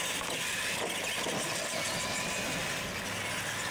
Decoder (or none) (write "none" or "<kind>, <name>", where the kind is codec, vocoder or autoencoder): none